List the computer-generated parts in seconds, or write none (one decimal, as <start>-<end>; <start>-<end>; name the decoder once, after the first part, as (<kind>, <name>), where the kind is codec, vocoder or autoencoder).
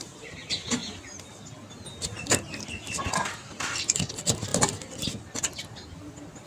none